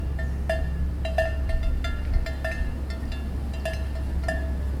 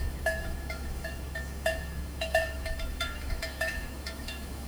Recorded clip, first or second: first